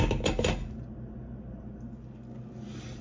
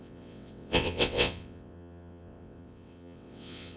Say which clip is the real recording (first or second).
first